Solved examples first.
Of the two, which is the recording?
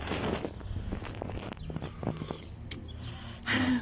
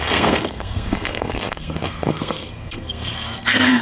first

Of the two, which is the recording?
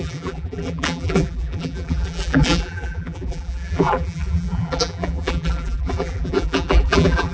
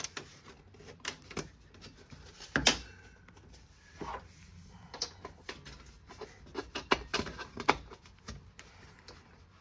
second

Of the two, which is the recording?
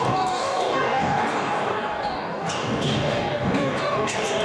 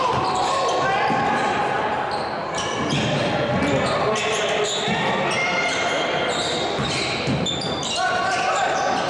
second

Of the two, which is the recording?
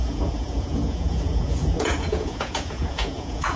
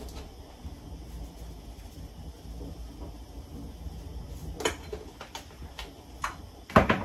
second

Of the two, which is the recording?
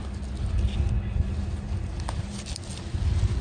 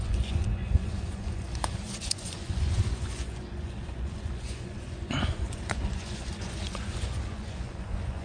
first